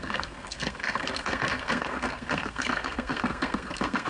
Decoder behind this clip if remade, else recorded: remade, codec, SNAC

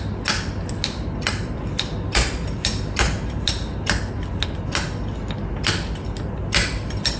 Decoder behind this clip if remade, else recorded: recorded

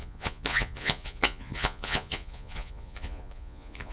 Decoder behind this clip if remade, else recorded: remade, vocoder, Vocos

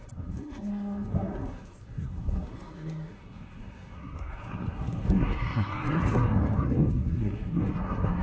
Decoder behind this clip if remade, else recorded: remade, codec, SNAC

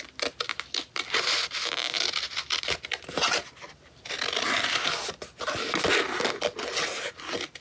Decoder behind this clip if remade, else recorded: recorded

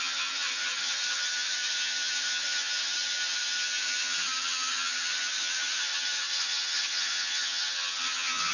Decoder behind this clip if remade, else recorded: remade, vocoder, HiFi-GAN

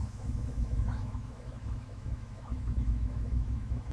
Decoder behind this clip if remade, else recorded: remade, autoencoder, DAC-VAE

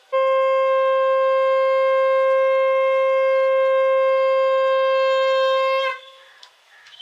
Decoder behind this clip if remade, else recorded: remade, autoencoder, DAC-VAE